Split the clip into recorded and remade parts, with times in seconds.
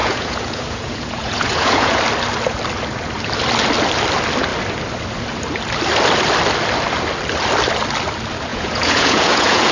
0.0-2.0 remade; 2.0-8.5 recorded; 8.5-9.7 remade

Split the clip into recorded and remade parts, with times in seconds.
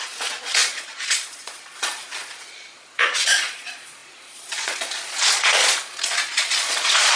0.0-7.2 remade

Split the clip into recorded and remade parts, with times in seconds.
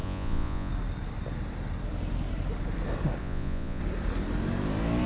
0.0-0.7 remade; 0.7-3.2 recorded; 3.2-3.8 remade; 3.8-5.1 recorded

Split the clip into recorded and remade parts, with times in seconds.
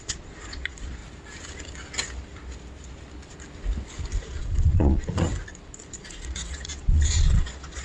0.0-1.0 remade; 1.0-4.2 recorded; 4.2-5.3 remade; 5.3-5.9 recorded; 5.9-7.8 remade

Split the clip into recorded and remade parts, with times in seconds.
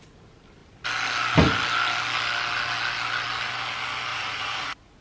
0.0-4.1 recorded; 4.1-5.0 remade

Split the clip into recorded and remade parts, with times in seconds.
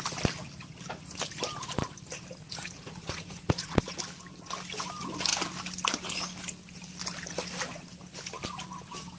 0.0-2.4 recorded; 2.4-4.0 remade; 4.0-9.2 recorded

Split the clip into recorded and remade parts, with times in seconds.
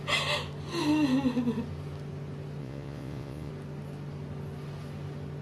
0.0-2.6 recorded; 2.6-3.5 remade; 3.5-5.4 recorded